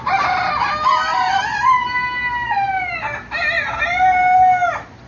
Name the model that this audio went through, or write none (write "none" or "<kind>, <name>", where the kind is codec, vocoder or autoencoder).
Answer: none